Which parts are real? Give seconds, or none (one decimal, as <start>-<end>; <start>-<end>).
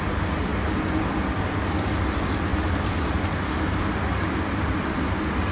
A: 0.0-5.5